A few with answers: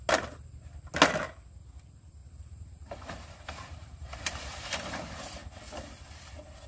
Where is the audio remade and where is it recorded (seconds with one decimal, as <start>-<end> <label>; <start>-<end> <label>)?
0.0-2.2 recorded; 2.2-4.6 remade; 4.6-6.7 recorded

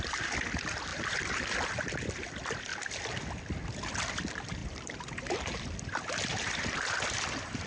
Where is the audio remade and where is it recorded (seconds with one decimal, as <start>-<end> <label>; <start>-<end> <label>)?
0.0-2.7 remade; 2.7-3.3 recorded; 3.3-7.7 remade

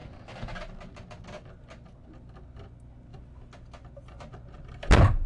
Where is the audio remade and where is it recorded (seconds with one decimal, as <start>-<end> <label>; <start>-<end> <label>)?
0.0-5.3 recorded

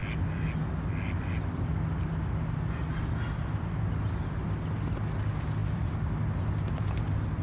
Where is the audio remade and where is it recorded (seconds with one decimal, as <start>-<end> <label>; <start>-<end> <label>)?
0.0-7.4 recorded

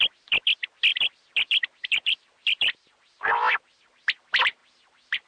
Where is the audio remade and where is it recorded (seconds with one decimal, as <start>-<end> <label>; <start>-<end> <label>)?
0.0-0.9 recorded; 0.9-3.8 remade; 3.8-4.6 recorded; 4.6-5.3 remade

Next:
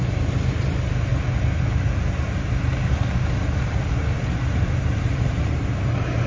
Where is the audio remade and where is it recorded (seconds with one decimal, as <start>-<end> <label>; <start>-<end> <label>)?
0.0-1.1 remade; 1.1-1.8 recorded; 1.8-2.8 remade; 2.8-4.5 recorded; 4.5-6.3 remade

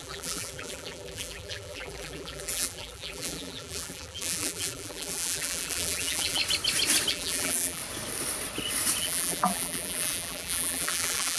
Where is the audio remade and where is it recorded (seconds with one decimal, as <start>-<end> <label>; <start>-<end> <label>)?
0.0-6.4 remade; 6.4-7.1 recorded; 7.1-7.8 remade; 7.8-9.0 recorded; 9.0-11.4 remade